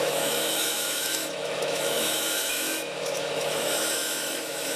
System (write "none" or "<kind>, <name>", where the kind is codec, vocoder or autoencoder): autoencoder, DAC-VAE